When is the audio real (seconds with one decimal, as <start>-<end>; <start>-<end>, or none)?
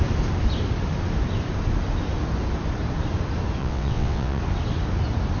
0.0-3.6; 4.4-5.4